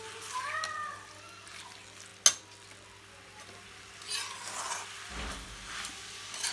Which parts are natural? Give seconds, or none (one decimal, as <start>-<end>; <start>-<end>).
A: 0.0-6.5